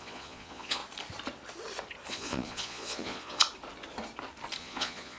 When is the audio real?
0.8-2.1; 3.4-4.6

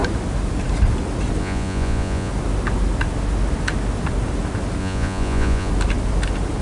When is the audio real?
0.0-1.4; 2.3-4.8; 5.7-6.6

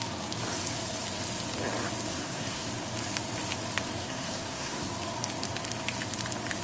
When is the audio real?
0.0-2.1; 2.7-4.0; 4.9-6.6

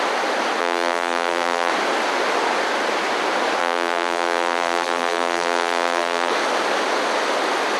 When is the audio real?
0.0-0.6; 1.7-3.6; 6.3-7.8

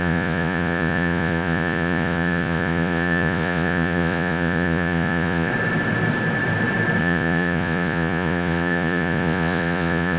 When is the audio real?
5.5-7.0

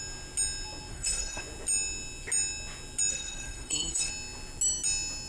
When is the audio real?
0.0-0.9; 1.4-3.1; 4.1-5.3

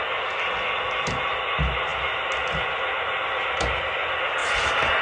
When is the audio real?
0.0-5.0

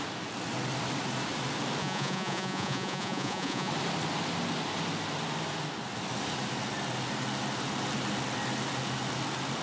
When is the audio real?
0.0-1.8; 3.7-9.6